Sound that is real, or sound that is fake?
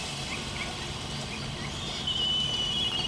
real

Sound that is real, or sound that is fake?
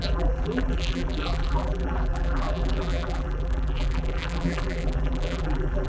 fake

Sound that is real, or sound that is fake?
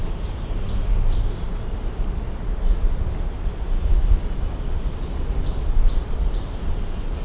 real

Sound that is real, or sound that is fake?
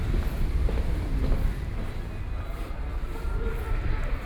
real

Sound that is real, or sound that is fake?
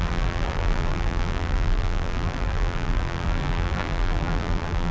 fake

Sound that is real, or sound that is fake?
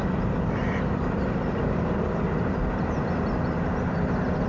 fake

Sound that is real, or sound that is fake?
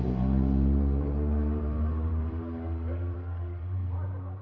fake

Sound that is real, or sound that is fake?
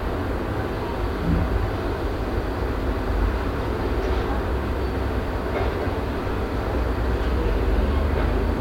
real